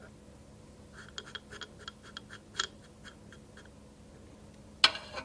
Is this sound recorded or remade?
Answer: recorded